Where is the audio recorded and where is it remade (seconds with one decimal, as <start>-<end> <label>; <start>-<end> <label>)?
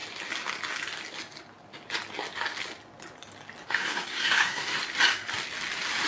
0.0-3.7 recorded; 3.7-4.8 remade; 4.8-6.1 recorded